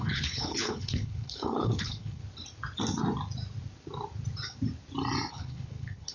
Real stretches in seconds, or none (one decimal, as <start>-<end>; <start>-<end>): 2.2-5.3